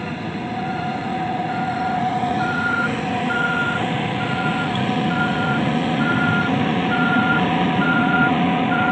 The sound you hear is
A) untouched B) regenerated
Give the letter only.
B